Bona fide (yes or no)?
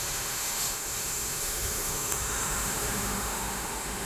no